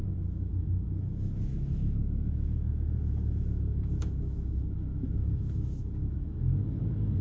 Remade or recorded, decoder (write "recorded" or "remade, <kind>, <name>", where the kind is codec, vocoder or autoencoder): remade, autoencoder, DAC-VAE